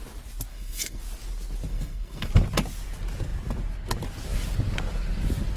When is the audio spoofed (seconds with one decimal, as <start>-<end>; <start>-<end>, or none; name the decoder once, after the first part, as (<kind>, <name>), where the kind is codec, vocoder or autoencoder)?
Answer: 0.5-1.0 (codec, SNAC); 1.7-2.3